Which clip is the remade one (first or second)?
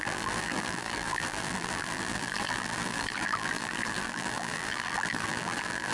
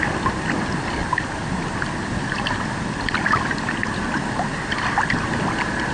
first